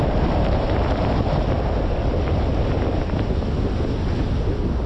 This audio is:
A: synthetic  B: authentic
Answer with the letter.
B